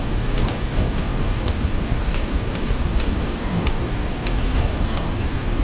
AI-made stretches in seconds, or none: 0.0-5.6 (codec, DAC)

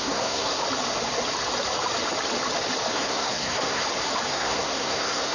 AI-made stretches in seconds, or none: 0.0-0.6 (codec, SNAC); 2.9-3.8; 4.3-5.3

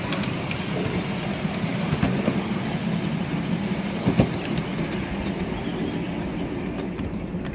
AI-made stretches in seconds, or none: none

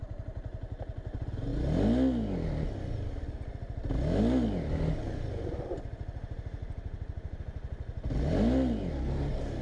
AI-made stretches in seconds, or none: 6.6-7.4 (vocoder, BigVGAN v2)

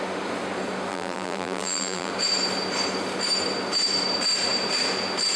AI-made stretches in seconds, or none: 0.9-2.1 (vocoder, BigVGAN v2)

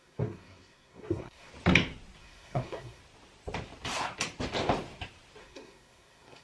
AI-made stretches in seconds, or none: 0.0-1.5 (codec, SNAC); 2.2-3.0; 5.4-6.4

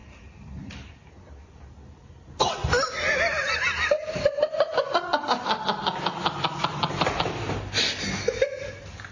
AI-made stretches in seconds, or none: 0.0-1.6 (vocoder, BigVGAN v2); 3.4-4.4; 6.1-7.3

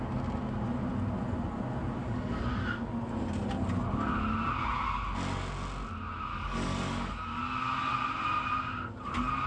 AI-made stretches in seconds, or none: 2.0-2.5 (codec, DAC); 6.3-7.4